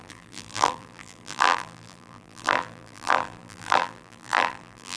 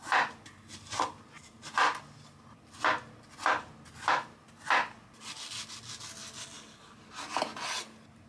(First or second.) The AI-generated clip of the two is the first